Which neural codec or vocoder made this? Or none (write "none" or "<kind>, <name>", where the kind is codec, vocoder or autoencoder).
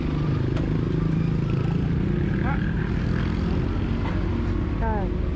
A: none